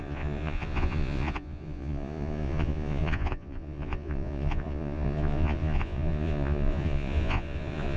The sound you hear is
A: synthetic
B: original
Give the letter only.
A